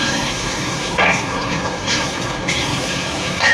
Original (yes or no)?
no